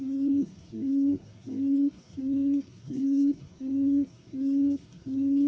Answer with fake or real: fake